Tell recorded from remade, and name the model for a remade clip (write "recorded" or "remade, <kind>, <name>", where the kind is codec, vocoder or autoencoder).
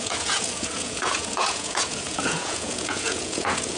remade, vocoder, Vocos